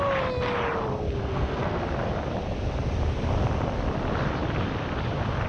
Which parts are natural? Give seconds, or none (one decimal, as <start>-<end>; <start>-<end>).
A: 0.0-1.2; 1.8-5.5